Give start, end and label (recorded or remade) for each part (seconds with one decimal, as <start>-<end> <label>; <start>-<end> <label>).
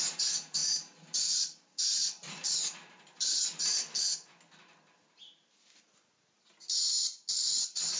0.0-8.0 recorded